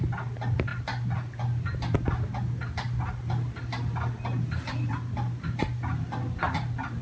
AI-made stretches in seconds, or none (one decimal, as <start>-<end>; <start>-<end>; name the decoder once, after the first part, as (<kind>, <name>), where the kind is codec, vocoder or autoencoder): none